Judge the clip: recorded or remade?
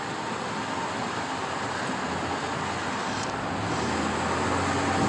recorded